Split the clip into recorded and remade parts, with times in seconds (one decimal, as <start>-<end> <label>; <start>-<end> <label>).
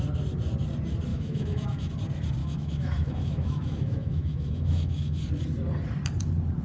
0.0-1.1 recorded; 1.1-1.9 remade; 1.9-2.4 recorded; 2.4-5.2 remade; 5.2-6.6 recorded